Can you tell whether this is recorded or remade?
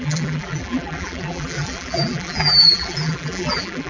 remade